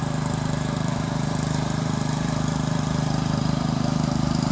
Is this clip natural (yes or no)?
no